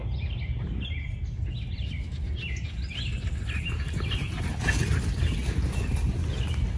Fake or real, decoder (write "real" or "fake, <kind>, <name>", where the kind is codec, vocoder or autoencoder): real